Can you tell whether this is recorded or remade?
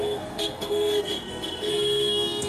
remade